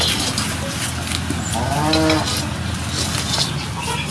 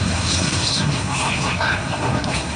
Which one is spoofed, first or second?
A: second